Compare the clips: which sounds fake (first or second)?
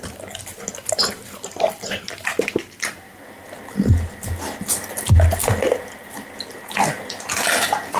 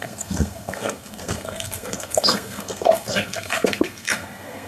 second